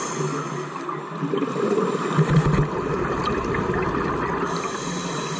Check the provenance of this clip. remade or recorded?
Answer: recorded